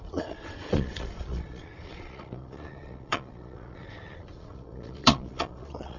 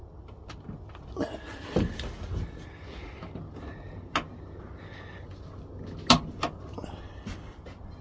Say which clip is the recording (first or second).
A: second